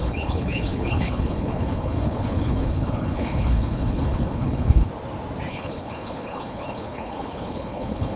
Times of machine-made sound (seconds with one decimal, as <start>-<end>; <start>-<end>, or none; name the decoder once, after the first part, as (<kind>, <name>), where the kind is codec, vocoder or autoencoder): 0.0-4.9 (codec, HILCodec); 5.5-8.2